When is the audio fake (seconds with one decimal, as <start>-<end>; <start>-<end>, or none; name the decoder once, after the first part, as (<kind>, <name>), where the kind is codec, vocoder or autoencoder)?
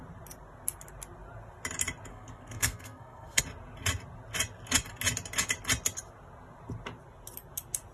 2.1-3.4 (codec, SNAC)